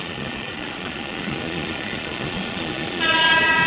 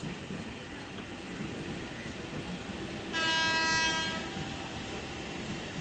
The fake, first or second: first